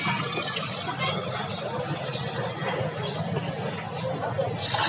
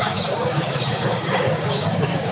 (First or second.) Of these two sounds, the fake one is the second